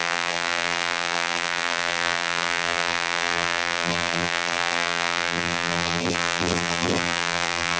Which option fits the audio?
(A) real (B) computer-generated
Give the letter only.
B